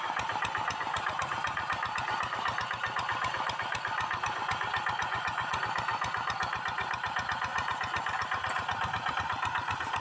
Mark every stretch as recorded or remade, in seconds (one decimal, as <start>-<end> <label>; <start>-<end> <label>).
0.0-5.0 recorded; 5.0-5.6 remade; 5.6-10.0 recorded